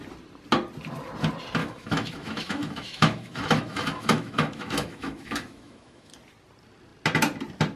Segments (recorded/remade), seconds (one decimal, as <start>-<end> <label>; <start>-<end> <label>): 0.0-1.6 recorded; 1.6-6.1 remade; 6.1-7.8 recorded